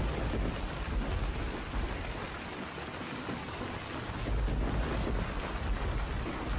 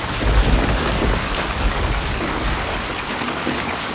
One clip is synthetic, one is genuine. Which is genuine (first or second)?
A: first